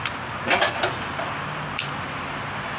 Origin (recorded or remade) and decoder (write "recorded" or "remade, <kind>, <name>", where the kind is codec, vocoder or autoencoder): recorded